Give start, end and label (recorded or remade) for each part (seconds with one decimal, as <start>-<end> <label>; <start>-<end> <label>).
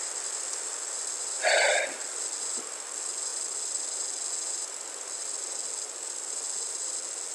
0.0-7.3 recorded